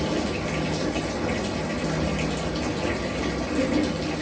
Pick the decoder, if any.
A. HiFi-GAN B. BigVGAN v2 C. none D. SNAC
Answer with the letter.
C